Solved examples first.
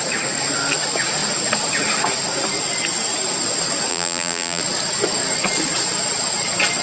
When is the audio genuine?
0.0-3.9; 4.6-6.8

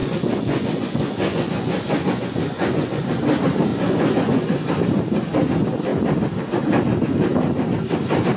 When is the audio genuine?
3.1-3.7; 4.7-8.4

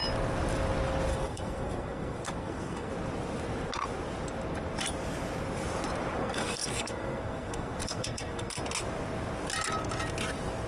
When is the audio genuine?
0.0-1.1; 2.9-6.2; 8.6-10.7